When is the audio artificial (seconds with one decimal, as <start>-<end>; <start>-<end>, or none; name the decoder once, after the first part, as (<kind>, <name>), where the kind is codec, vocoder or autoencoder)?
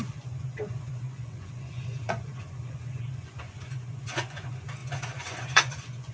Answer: 0.0-6.1 (vocoder, Vocos)